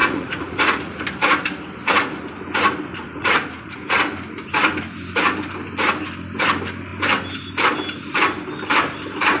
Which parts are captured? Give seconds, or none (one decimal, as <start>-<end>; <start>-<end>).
1.0-2.9; 3.8-9.4